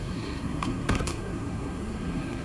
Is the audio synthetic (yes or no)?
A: yes